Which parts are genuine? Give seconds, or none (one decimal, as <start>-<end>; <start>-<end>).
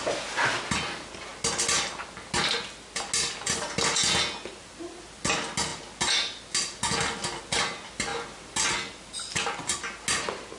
0.0-10.6